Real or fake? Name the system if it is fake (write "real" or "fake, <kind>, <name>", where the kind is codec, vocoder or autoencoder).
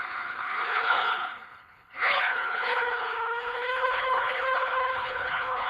fake, codec, HILCodec